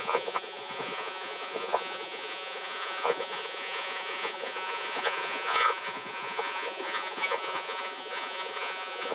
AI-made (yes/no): yes